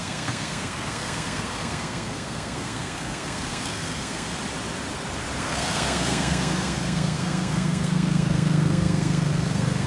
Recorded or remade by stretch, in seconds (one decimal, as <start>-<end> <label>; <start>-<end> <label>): 0.0-4.3 remade; 4.3-5.4 recorded; 5.4-9.9 remade